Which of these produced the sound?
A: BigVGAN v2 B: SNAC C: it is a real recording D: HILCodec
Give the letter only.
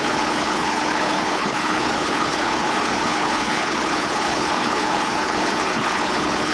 D